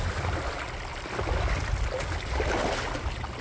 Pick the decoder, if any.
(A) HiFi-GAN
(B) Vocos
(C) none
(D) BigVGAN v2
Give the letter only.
C